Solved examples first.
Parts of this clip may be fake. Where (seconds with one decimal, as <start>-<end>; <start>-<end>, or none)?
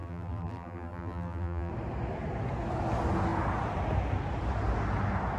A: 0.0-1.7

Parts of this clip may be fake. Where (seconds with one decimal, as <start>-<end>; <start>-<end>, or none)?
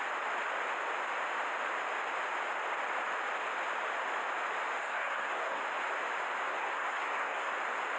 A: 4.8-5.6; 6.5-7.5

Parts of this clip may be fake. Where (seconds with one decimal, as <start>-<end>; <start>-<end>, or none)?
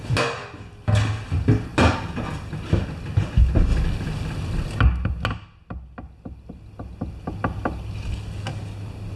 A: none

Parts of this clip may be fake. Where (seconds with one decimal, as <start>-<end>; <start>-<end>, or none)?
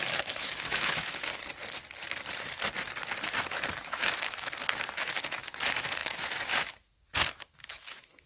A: 0.0-1.3; 3.6-8.3